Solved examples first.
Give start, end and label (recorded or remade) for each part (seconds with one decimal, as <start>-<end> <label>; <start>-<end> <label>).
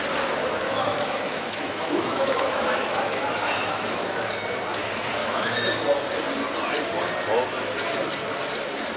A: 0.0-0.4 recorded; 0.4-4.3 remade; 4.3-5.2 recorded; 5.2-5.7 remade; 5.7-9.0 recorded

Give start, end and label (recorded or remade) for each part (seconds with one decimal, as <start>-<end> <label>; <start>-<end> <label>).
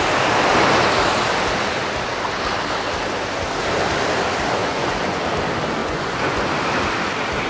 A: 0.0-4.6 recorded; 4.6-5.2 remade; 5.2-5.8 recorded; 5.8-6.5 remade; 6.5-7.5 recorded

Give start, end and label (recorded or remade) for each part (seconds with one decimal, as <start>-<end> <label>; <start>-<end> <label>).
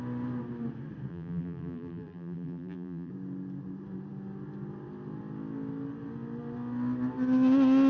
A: 0.0-1.1 recorded; 1.1-3.1 remade; 3.1-7.9 recorded